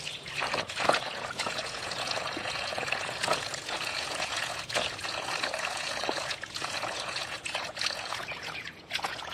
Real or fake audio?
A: fake